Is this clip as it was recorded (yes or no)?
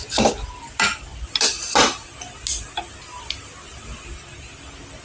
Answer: yes